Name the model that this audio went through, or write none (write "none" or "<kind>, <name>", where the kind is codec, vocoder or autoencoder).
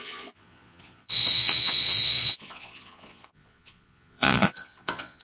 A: vocoder, Vocos